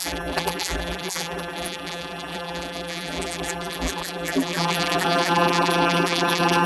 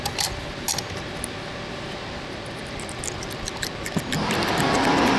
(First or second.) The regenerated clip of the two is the first